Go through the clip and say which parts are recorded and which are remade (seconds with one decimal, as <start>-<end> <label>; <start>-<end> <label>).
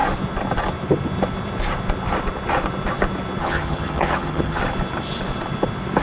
0.0-3.4 recorded; 3.4-4.6 remade; 4.6-6.0 recorded